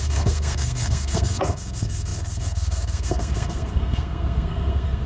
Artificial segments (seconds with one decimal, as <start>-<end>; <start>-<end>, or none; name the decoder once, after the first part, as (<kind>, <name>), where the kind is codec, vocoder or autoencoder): 0.0-5.1 (codec, SNAC)